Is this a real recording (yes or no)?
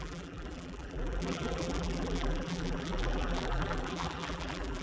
no